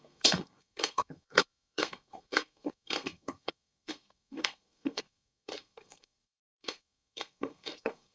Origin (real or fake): fake